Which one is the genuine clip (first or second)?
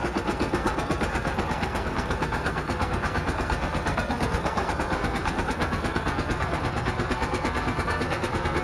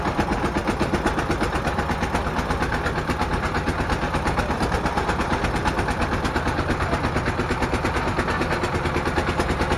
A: second